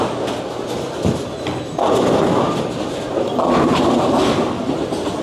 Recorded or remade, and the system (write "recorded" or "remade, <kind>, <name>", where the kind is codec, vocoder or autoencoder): recorded